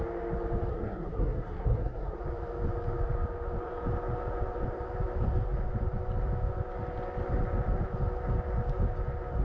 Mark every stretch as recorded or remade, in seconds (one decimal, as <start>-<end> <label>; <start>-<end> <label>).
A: 0.0-0.7 recorded; 0.7-2.2 remade; 2.2-9.4 recorded